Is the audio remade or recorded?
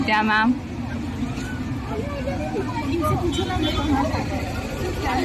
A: recorded